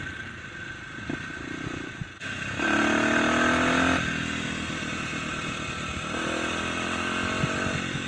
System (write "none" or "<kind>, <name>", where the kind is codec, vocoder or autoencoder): none